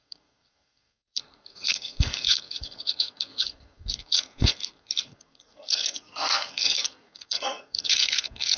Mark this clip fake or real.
fake